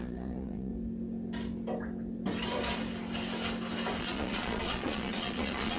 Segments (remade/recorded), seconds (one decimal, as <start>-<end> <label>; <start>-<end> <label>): 0.0-0.7 remade; 0.7-4.0 recorded; 4.0-5.8 remade